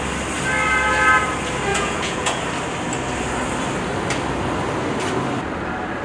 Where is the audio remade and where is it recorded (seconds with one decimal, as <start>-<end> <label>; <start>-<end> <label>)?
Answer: 0.0-1.7 recorded; 1.7-2.4 remade; 2.4-6.0 recorded